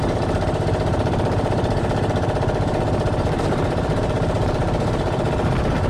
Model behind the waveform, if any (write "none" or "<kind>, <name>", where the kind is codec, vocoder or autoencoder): vocoder, BigVGAN v2